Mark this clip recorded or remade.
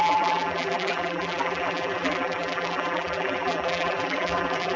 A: remade